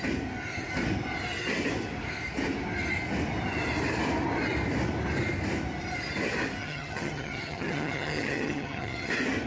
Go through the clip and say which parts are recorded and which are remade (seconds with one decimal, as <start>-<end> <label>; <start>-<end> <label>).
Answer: 0.0-6.6 recorded; 6.6-9.1 remade; 9.1-9.5 recorded